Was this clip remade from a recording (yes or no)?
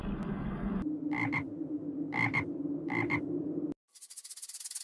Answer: no